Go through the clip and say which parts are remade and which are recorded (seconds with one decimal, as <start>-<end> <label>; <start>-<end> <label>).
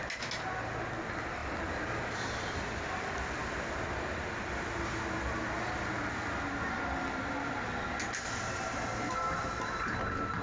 0.0-10.4 recorded